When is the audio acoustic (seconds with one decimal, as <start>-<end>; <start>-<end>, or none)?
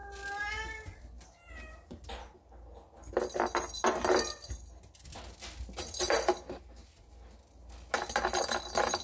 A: 0.0-9.0